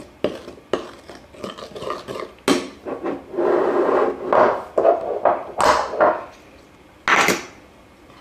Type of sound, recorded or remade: recorded